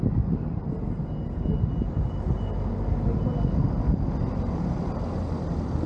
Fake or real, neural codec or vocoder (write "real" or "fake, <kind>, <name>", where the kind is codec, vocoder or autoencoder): real